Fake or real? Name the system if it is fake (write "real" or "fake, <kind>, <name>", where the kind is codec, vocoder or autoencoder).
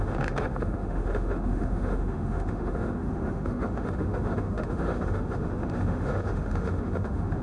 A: fake, autoencoder, DAC-VAE